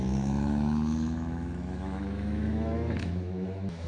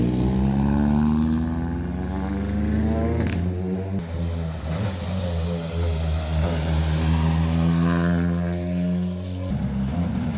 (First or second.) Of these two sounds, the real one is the second